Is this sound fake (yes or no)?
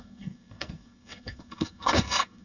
yes